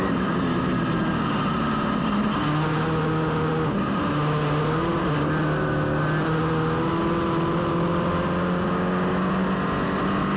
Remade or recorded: recorded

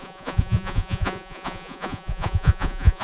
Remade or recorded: remade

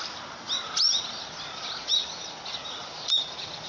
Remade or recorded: recorded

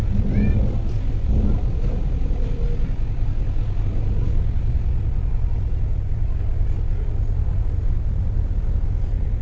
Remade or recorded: recorded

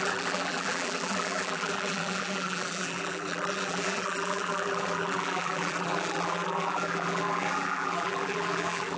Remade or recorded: remade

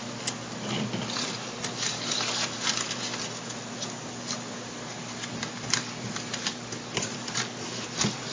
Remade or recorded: recorded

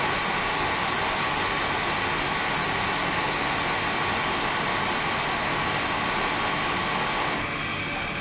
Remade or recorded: recorded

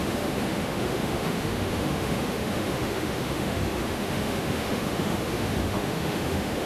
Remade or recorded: remade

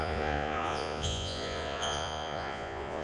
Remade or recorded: remade